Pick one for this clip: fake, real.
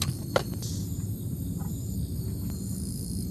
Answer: real